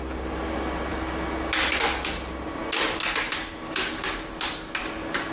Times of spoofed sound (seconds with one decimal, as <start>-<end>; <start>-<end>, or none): none